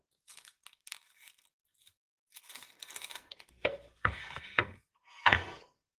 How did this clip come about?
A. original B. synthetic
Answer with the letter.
B